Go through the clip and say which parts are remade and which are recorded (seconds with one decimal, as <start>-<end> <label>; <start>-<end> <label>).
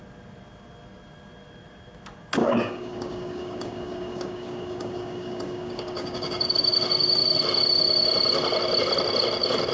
0.0-2.4 recorded; 2.4-6.5 remade; 6.5-9.7 recorded